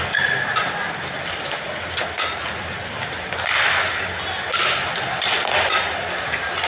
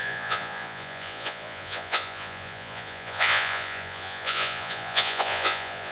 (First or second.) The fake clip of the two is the second